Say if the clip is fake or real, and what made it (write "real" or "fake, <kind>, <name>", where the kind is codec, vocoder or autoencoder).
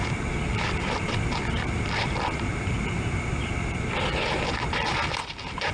fake, vocoder, BigVGAN v2